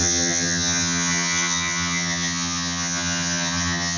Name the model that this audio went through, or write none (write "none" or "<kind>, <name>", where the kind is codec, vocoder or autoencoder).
vocoder, HiFi-GAN